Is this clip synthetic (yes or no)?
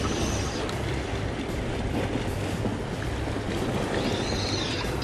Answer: no